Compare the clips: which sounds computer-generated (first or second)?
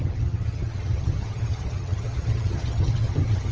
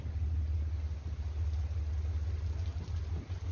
first